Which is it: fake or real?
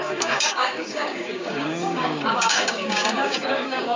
fake